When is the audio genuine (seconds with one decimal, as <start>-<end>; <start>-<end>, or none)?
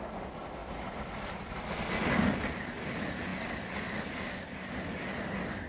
0.0-5.7